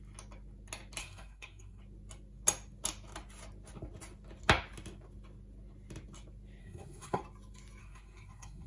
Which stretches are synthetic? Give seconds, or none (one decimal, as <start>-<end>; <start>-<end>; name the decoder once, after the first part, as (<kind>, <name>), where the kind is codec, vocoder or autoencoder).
1.0-1.8 (codec, SNAC); 6.6-7.2; 7.8-8.7